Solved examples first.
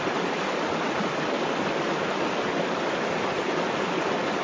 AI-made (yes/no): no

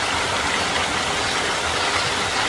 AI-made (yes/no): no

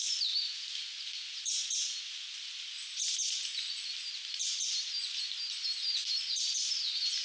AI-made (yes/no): no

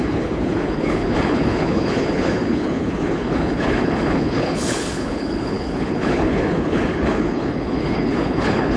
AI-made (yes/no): yes